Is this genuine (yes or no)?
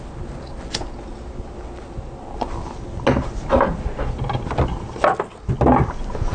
yes